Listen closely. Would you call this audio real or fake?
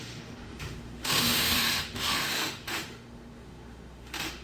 fake